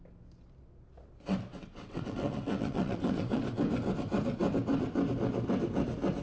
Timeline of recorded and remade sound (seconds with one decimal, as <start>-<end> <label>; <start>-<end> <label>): 0.0-1.5 recorded; 1.5-3.4 remade; 3.4-6.2 recorded